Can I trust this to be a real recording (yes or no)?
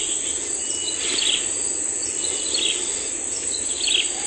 yes